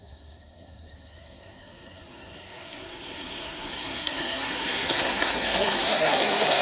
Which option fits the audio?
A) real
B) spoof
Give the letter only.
B